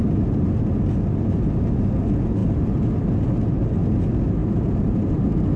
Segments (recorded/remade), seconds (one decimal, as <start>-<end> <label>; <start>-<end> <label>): 0.0-2.4 recorded; 2.4-3.1 remade; 3.1-4.4 recorded; 4.4-5.1 remade; 5.1-5.6 recorded